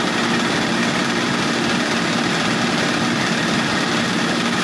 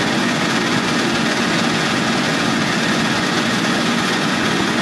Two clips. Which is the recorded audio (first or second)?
first